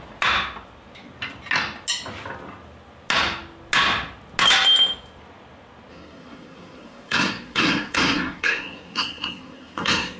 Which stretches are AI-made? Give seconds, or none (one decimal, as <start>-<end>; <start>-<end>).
5.9-10.2